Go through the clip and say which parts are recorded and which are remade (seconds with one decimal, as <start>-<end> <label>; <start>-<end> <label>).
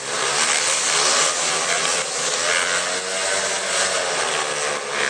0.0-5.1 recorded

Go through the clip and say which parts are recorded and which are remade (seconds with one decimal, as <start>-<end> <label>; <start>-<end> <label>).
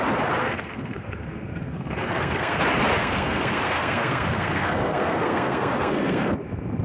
0.0-0.4 recorded; 0.4-2.6 remade; 2.6-3.0 recorded; 3.0-6.3 remade; 6.3-6.8 recorded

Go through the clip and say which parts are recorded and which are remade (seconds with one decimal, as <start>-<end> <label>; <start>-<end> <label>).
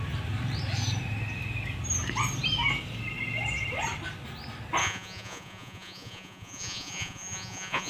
0.0-4.8 recorded; 4.8-7.9 remade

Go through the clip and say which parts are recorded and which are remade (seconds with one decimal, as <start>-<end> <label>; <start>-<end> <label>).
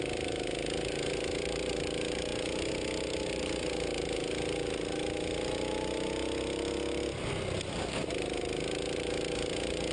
0.0-9.9 recorded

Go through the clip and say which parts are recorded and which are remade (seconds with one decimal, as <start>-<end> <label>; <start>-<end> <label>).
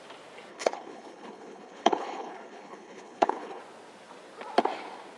0.0-0.5 recorded; 0.5-3.6 remade; 3.6-5.2 recorded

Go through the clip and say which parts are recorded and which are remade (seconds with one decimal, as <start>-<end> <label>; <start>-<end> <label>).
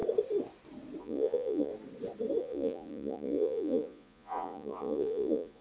0.0-1.0 recorded; 1.0-1.7 remade; 1.7-2.4 recorded; 2.4-5.6 remade